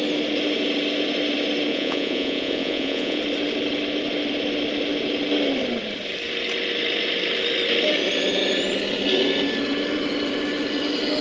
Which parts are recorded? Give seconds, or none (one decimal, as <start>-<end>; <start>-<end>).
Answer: 0.0-1.7; 3.2-11.2